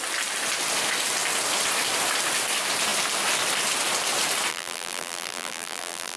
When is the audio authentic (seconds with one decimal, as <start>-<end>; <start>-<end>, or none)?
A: 0.0-4.5